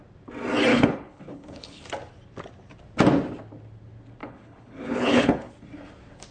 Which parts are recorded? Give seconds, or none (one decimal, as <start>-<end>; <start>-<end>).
0.0-0.7; 1.8-4.2; 5.5-6.3